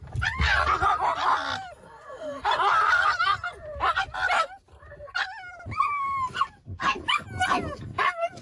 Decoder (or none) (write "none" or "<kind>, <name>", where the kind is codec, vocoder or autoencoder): none